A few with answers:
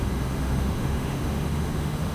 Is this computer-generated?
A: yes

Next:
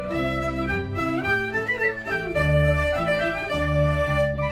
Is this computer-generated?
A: yes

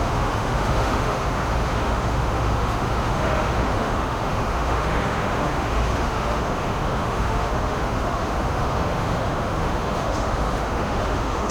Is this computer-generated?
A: yes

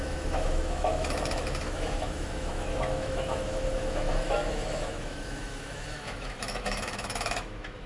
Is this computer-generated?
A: yes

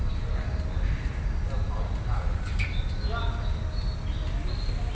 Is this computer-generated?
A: no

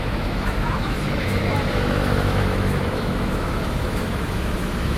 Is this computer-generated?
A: yes